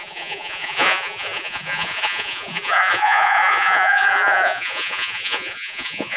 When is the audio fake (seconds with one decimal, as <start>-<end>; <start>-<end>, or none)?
0.0-6.2